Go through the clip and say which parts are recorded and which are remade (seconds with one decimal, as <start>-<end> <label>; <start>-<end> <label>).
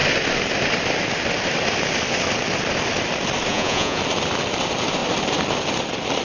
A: 0.0-3.5 recorded; 3.5-4.0 remade; 4.0-6.2 recorded